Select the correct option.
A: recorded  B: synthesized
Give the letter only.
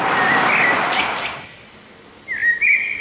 A